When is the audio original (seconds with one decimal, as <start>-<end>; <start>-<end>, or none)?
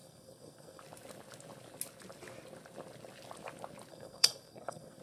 0.8-3.9